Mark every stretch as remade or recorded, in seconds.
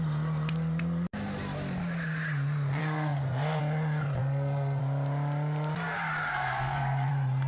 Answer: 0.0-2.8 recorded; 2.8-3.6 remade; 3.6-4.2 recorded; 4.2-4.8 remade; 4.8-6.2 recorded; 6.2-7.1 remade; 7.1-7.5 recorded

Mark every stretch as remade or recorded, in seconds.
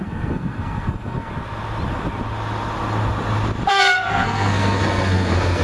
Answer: 0.0-1.3 remade; 1.3-3.7 recorded; 3.7-5.6 remade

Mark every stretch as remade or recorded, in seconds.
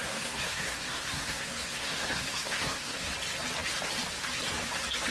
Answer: 0.0-3.1 remade; 3.1-5.1 recorded